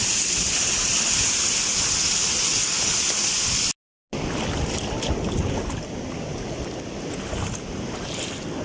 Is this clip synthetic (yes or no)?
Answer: no